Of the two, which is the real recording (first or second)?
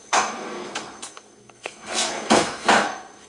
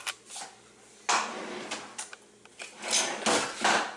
second